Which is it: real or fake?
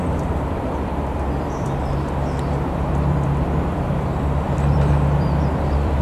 fake